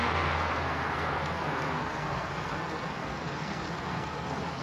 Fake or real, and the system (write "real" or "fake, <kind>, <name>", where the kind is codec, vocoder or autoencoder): fake, codec, SNAC